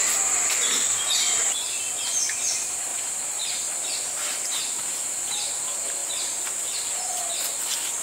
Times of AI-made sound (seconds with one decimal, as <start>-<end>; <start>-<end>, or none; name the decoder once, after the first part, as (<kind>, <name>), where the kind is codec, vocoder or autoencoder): 2.9-3.7 (vocoder, BigVGAN v2); 6.0-6.6